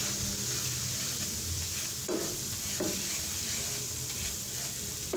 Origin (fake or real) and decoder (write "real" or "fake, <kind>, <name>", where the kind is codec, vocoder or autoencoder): real